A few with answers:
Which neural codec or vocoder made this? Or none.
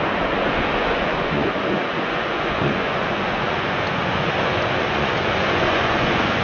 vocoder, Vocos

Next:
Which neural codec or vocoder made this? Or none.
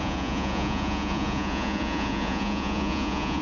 vocoder, Vocos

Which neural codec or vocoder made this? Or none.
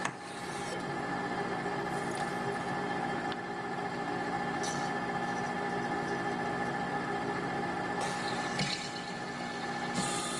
none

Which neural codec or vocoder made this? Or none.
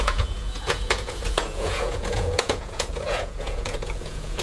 vocoder, Vocos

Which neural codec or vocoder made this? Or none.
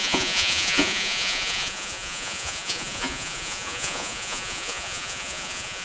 vocoder, Vocos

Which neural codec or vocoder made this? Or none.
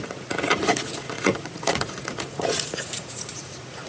vocoder, Vocos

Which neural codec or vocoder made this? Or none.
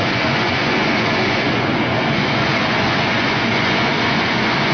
vocoder, Vocos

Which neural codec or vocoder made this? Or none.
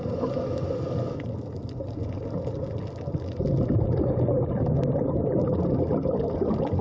none